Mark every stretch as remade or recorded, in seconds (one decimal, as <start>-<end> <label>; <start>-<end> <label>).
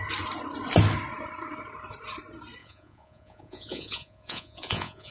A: 0.0-2.6 recorded; 2.6-5.1 remade